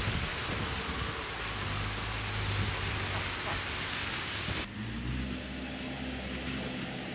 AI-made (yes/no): no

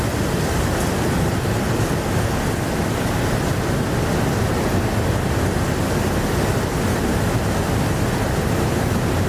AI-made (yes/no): no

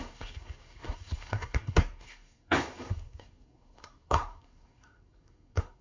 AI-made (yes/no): yes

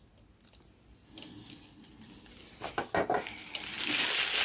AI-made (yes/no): no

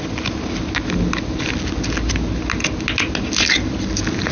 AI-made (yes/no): no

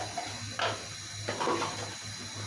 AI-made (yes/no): no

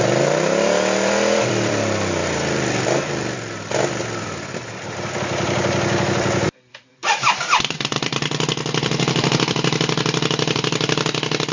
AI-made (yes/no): yes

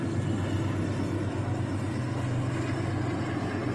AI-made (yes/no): no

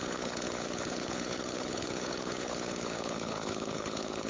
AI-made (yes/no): yes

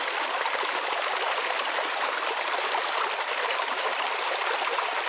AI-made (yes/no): no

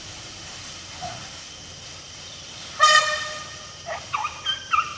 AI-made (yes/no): yes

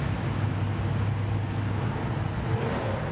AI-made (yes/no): no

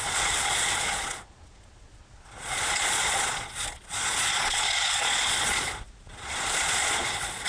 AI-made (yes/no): yes